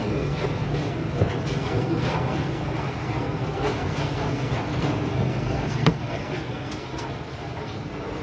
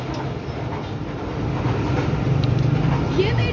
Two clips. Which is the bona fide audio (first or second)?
second